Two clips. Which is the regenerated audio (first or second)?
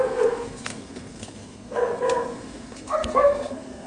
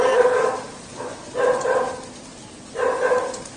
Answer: first